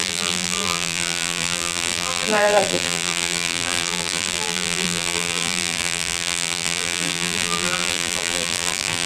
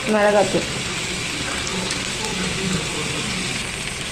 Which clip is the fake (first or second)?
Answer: first